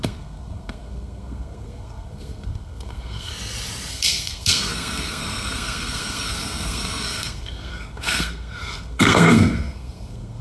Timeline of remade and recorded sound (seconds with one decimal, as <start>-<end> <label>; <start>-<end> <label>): 0.0-3.3 remade; 3.3-3.9 recorded; 3.9-10.4 remade